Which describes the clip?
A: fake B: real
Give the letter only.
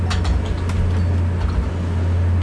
B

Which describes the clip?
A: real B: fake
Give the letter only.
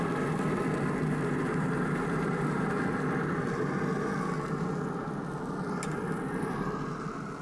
A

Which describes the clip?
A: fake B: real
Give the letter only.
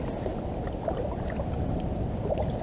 B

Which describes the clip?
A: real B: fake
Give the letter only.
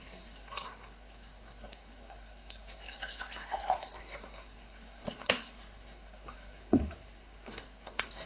B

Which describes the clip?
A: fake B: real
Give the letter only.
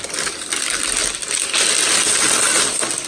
B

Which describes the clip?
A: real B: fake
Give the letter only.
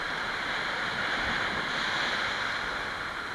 A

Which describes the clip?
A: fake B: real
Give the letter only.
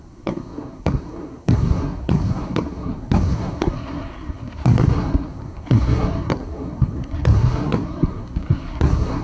A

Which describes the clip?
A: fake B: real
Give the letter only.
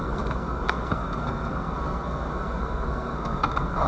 A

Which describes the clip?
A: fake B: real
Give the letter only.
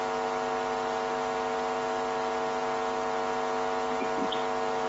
B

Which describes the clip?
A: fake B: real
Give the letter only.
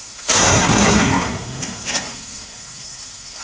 A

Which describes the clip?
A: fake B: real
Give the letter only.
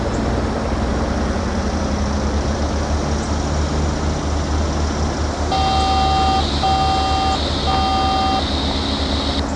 B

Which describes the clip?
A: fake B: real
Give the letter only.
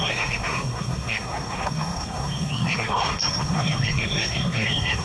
A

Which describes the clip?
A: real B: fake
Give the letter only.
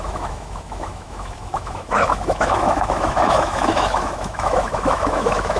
B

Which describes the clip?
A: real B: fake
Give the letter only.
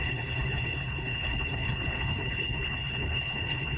B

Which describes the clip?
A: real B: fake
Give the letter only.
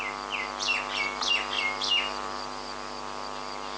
A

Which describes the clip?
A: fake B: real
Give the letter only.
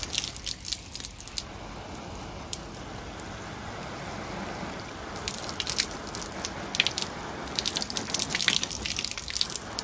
B